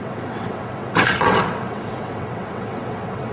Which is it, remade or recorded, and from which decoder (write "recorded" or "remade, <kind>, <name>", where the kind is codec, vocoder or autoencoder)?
remade, vocoder, WaveNeXt